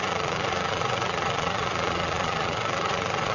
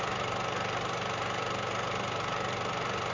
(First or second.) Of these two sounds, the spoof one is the first